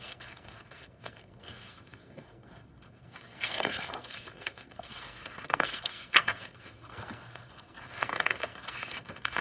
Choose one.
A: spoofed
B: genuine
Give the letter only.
A